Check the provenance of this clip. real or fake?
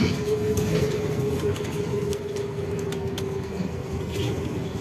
fake